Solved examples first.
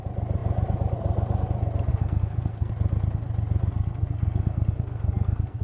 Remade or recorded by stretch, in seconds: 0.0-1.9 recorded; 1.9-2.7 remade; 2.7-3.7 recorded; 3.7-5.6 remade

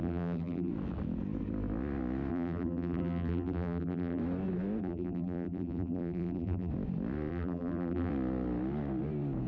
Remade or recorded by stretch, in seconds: 0.0-0.7 remade; 0.7-2.3 recorded; 2.3-4.2 remade; 4.2-4.8 recorded; 4.8-6.7 remade; 6.7-7.3 recorded; 7.3-8.1 remade; 8.1-9.5 recorded

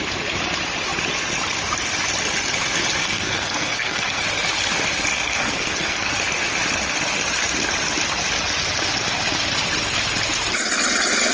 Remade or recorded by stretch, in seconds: 0.0-3.0 recorded; 3.0-4.2 remade; 4.2-5.1 recorded; 5.1-6.1 remade; 6.1-11.3 recorded

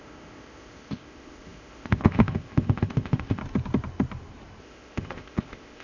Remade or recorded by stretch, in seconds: 0.0-3.4 remade; 3.4-4.6 recorded; 4.6-5.8 remade

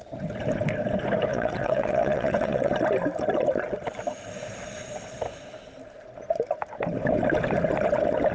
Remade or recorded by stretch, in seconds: 0.0-1.3 recorded; 1.3-2.7 remade; 2.7-8.3 recorded

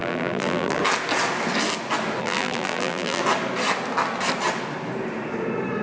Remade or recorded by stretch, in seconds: 0.0-0.8 remade; 0.8-2.2 recorded; 2.2-3.2 remade; 3.2-5.8 recorded

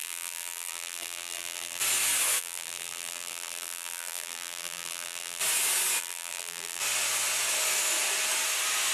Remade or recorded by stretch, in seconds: 0.0-1.8 remade; 1.8-2.4 recorded; 2.4-5.4 remade; 5.4-6.0 recorded; 6.0-6.8 remade; 6.8-8.9 recorded